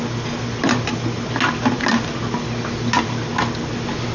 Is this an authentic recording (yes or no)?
yes